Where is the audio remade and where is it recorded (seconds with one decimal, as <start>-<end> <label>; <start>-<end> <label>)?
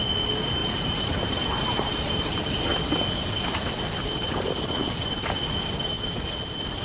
0.0-0.6 recorded; 0.6-2.1 remade; 2.1-6.8 recorded